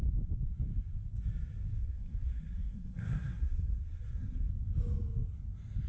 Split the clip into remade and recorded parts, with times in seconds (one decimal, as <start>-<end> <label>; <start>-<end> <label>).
0.0-1.7 recorded; 1.7-4.5 remade; 4.5-5.9 recorded